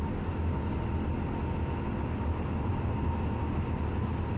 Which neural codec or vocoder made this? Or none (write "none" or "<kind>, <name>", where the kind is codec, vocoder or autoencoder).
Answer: none